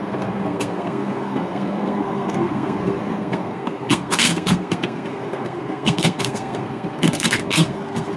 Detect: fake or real fake